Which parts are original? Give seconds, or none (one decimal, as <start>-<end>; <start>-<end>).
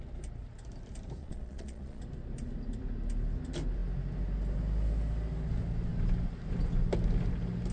0.0-1.2; 2.0-7.7